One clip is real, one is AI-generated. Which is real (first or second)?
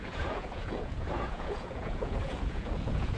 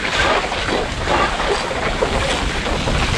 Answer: second